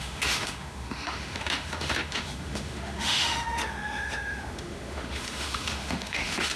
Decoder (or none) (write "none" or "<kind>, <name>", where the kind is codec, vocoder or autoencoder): autoencoder, DAC-VAE